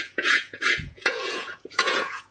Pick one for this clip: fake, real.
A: fake